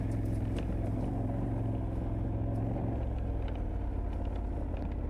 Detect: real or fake real